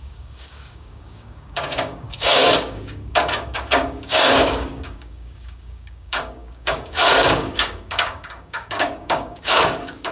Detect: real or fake fake